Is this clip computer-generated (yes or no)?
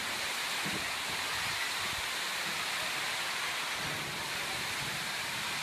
no